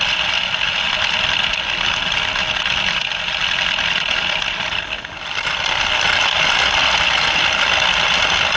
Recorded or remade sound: recorded